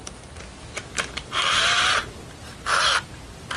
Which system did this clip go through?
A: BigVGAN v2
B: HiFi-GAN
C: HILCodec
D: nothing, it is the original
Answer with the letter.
D